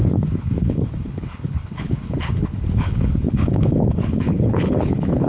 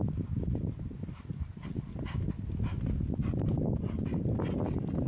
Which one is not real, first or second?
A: first